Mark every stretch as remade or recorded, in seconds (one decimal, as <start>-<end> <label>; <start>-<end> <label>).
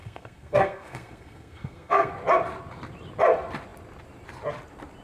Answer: 0.0-2.1 remade; 2.1-5.0 recorded